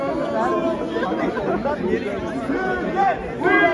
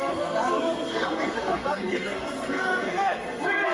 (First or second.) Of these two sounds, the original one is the first